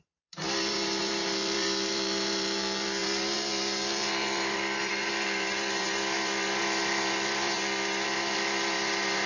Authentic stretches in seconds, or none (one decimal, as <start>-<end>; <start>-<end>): none